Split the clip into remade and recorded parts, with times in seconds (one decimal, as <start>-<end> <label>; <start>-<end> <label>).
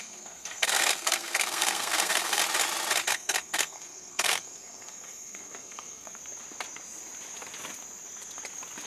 0.0-2.4 remade; 2.4-3.1 recorded; 3.1-6.2 remade; 6.2-8.9 recorded